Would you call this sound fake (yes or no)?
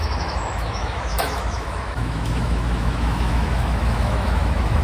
yes